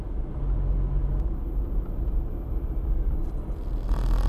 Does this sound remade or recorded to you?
recorded